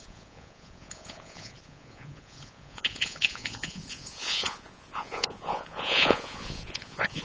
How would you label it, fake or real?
fake